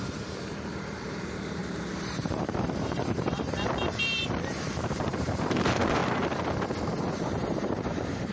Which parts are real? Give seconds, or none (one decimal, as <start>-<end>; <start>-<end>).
6.0-7.0